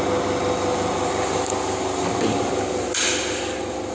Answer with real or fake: real